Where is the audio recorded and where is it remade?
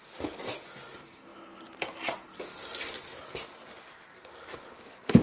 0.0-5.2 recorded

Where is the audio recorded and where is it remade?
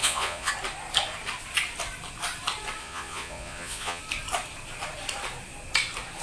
0.0-0.5 remade; 0.5-2.8 recorded; 2.8-4.0 remade; 4.0-6.2 recorded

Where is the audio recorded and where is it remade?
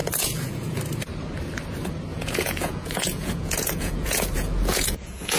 0.0-0.8 remade; 0.8-2.1 recorded; 2.1-5.4 remade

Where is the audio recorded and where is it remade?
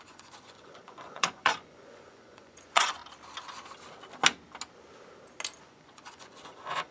0.0-3.0 remade; 3.0-5.6 recorded; 5.6-6.9 remade